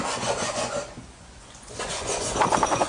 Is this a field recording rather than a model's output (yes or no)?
no